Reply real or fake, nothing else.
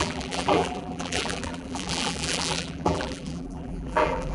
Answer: fake